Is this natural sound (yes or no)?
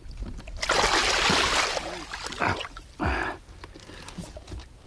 yes